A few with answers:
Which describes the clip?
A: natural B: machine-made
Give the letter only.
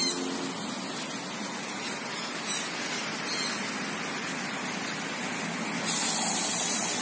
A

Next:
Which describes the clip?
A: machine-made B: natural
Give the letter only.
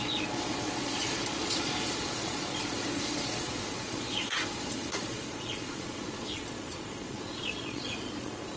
A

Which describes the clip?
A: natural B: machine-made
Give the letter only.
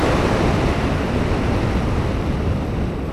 A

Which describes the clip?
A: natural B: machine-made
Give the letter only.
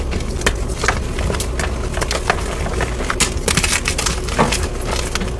A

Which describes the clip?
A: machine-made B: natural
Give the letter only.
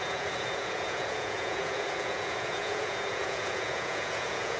A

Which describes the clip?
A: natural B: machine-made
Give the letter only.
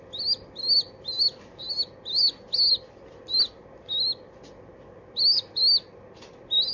A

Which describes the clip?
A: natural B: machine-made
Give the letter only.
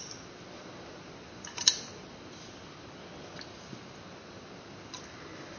A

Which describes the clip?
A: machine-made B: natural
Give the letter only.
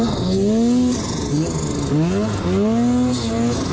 B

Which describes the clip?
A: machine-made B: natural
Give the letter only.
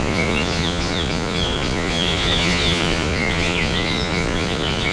A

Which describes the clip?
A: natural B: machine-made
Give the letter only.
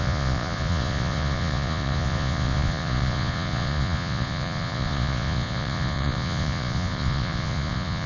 B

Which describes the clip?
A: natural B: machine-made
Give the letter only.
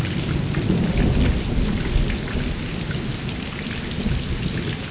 A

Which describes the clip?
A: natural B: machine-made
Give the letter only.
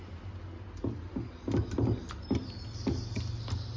A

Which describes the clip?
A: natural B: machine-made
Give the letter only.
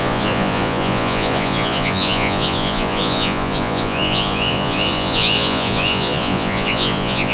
B